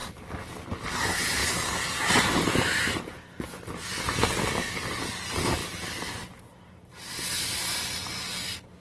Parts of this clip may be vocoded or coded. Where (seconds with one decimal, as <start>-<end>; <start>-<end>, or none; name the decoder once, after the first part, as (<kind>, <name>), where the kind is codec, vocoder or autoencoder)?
none